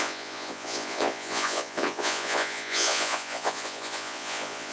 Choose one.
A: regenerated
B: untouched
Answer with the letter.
A